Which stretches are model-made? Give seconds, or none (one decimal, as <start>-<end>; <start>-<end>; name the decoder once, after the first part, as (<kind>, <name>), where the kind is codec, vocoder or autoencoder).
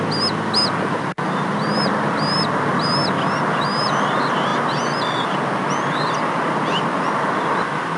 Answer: none